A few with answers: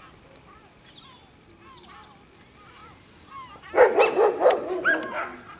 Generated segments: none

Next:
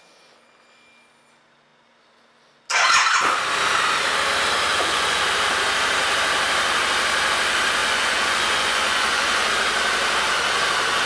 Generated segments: 4.7-5.2 (vocoder, Vocos); 7.8-9.5

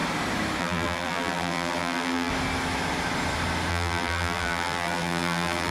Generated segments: 0.6-2.3 (vocoder, BigVGAN v2); 3.7-5.7